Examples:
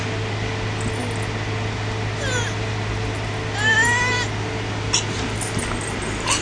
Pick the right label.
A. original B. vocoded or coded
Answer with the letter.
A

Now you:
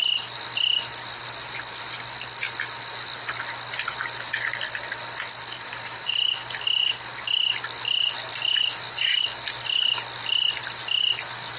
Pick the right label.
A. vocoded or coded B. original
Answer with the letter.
B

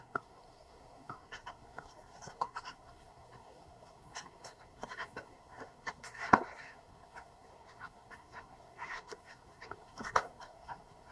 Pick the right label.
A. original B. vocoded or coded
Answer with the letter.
B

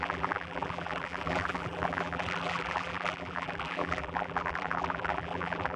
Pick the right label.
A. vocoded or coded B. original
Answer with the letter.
A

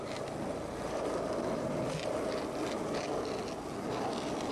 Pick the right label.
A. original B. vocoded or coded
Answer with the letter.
A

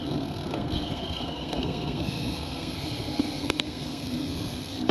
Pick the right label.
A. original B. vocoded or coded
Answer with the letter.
B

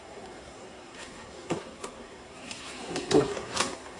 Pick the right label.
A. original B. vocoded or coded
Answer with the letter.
B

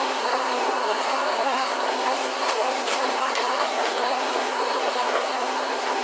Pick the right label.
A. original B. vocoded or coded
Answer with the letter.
B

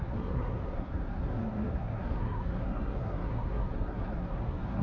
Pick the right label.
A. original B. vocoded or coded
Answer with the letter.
B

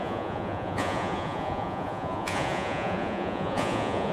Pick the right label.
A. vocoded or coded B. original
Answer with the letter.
A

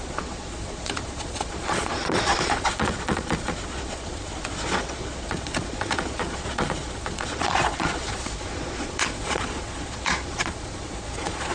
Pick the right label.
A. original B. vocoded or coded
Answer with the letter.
B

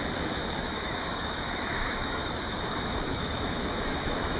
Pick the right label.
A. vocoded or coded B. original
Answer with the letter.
A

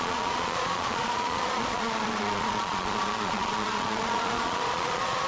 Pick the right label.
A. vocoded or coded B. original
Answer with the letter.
A